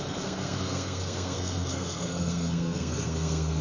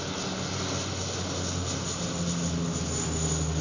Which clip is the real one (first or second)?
second